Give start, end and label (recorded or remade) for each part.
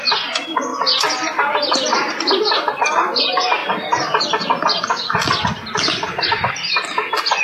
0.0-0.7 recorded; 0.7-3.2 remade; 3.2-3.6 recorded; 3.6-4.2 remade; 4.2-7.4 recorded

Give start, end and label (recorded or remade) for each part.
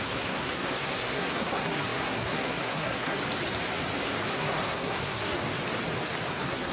0.0-3.2 remade; 3.2-4.3 recorded; 4.3-5.4 remade; 5.4-6.3 recorded; 6.3-6.7 remade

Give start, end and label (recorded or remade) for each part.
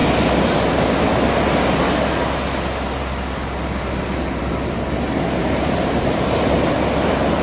0.0-5.4 recorded; 5.4-6.9 remade; 6.9-7.4 recorded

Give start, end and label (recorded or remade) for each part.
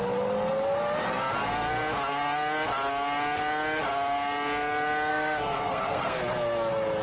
0.0-5.1 recorded; 5.1-6.2 remade; 6.2-7.0 recorded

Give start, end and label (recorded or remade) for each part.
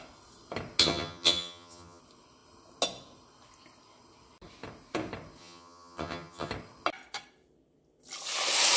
0.0-0.8 recorded; 0.8-2.0 remade; 2.0-5.4 recorded; 5.4-6.5 remade; 6.5-8.8 recorded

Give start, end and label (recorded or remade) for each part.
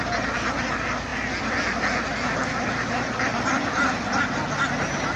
0.0-5.2 recorded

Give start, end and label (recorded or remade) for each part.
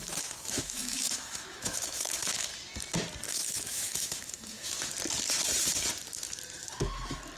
0.0-2.5 remade; 2.5-3.3 recorded; 3.3-4.9 remade; 4.9-7.4 recorded